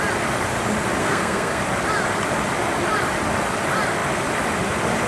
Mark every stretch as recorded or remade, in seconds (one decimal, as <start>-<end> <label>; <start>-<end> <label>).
0.0-1.0 recorded; 1.0-1.6 remade; 1.6-5.1 recorded